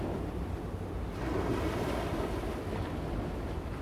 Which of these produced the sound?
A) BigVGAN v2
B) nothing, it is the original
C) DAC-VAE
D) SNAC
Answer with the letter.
B